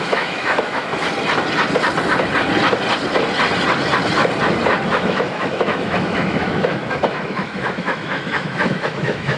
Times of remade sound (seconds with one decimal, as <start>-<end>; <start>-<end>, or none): 0.0-0.9; 4.9-9.4